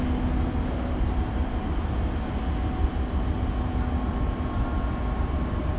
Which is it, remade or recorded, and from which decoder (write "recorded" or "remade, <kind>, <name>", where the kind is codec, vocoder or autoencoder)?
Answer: recorded